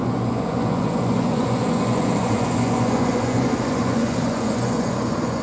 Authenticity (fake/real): fake